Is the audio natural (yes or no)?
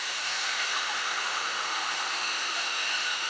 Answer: no